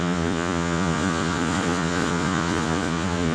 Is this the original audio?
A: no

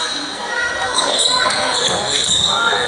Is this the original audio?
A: no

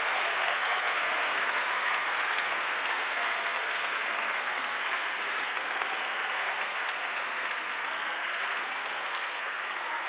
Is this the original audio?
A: no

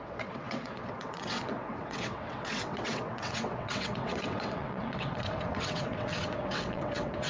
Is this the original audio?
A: no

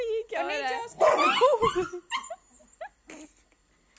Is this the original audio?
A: yes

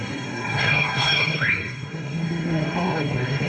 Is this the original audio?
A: no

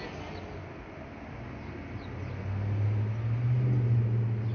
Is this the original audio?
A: yes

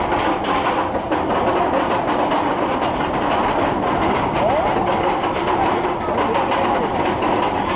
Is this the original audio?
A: yes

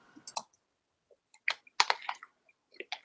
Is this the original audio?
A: yes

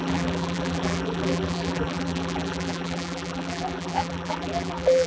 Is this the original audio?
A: no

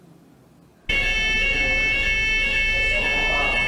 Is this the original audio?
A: yes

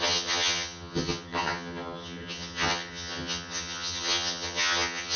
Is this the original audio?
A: no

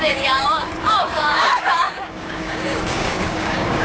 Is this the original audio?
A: no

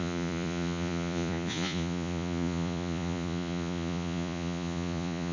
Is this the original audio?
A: no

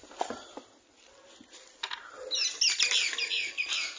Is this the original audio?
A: yes